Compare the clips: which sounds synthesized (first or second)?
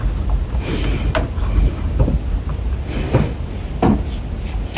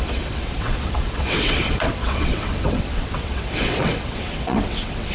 second